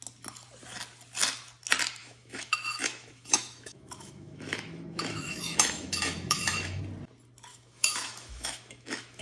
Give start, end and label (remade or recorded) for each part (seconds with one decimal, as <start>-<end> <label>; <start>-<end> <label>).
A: 0.0-2.0 recorded; 2.0-6.8 remade; 6.8-7.5 recorded; 7.5-9.2 remade